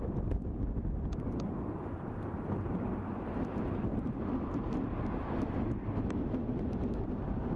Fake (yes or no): no